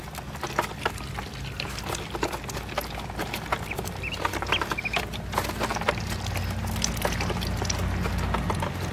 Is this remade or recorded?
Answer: recorded